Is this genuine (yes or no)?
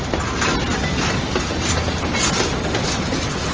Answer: yes